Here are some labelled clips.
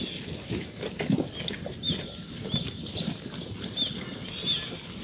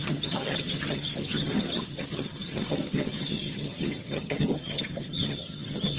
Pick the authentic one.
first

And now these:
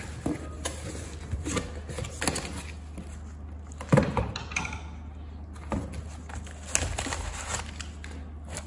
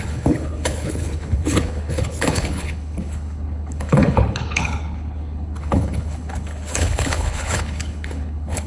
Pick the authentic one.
first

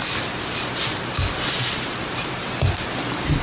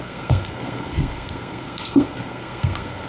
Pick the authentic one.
first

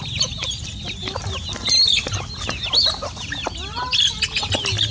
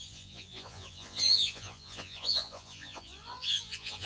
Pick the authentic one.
first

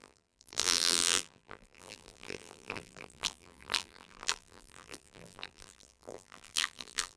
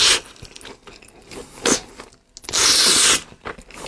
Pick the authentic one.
second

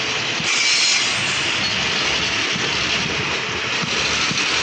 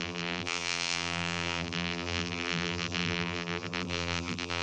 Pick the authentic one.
first